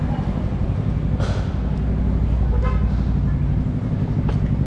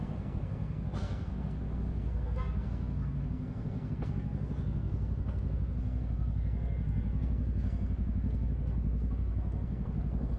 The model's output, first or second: second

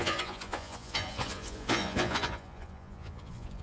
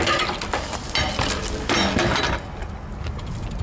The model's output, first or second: first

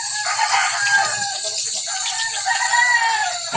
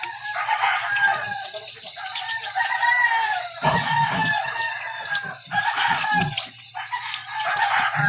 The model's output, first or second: second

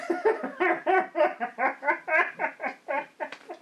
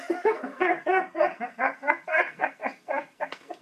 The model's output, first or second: second